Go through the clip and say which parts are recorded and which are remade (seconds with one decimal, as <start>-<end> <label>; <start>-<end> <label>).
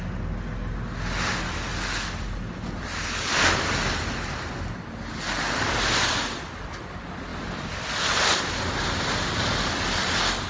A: 0.0-10.5 recorded